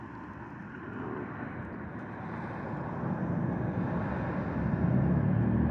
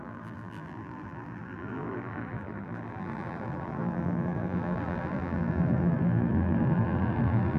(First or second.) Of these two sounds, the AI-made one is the second